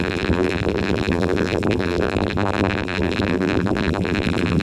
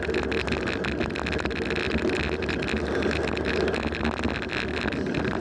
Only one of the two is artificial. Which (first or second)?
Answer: first